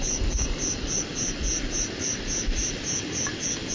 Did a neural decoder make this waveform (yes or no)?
no